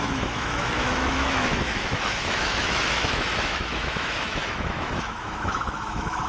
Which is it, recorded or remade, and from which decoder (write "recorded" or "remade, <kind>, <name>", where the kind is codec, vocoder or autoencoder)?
remade, autoencoder, DAC-VAE